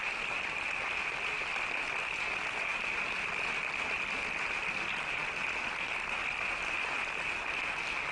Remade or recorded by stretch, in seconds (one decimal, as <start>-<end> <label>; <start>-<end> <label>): 0.0-8.1 recorded